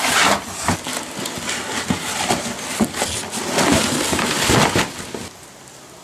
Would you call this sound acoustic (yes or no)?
yes